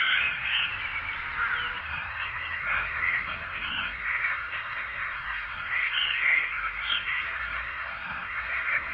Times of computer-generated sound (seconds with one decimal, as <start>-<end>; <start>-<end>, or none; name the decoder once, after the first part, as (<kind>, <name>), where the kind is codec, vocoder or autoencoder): 0.0-0.7 (codec, SNAC); 1.8-8.9